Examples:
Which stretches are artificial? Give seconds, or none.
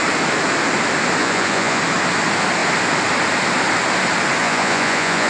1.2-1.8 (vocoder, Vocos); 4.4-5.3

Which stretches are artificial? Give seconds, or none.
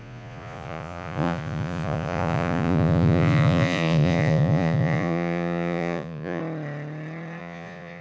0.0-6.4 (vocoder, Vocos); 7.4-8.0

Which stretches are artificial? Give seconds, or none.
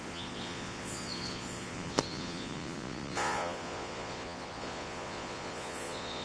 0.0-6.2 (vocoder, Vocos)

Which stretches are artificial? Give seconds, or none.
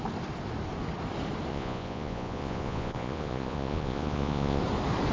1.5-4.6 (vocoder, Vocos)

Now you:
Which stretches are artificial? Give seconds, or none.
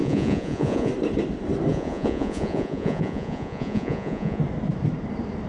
0.0-0.9 (vocoder, Vocos); 1.7-4.4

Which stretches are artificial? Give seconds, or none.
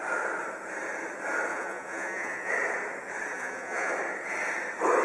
1.5-2.5 (vocoder, Vocos); 3.3-3.9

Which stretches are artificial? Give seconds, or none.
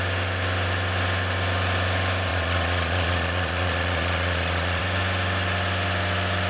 2.3-4.8 (vocoder, Vocos)